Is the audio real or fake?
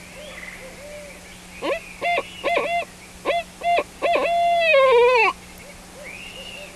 real